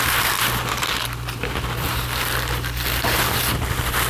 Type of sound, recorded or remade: remade